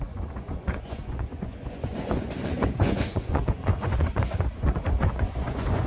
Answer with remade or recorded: remade